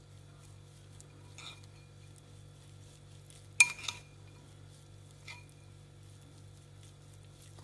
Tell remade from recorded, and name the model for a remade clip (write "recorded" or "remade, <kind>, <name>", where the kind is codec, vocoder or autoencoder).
recorded